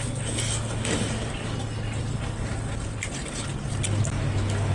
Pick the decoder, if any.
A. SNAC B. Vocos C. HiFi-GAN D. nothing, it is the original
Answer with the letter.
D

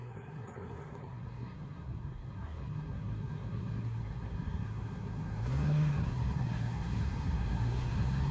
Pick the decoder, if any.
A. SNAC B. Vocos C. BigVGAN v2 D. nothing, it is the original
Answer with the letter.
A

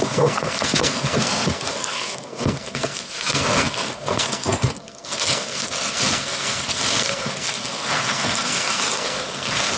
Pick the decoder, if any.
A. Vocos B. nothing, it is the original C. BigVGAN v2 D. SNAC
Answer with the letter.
D